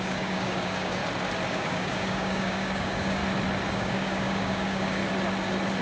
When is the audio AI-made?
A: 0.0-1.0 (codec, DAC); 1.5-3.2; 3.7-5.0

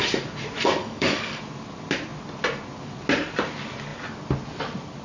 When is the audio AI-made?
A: 0.8-1.4 (codec, DAC)

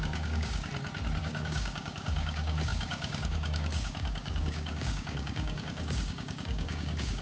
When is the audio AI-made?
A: 0.0-0.7 (codec, DAC); 1.2-7.2